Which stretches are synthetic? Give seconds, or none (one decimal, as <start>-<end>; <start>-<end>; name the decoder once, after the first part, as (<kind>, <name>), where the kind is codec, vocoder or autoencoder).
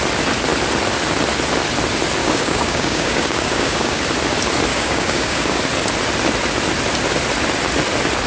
2.2-4.0 (codec, DAC); 4.7-5.6